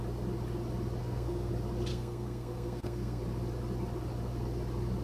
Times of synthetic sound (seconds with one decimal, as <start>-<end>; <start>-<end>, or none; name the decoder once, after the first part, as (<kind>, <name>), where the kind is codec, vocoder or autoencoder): 1.0-1.5 (codec, SNAC); 1.9-3.2